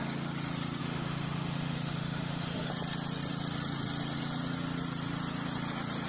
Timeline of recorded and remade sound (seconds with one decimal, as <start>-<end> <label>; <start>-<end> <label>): 0.0-0.8 recorded; 0.8-2.7 remade; 2.7-6.1 recorded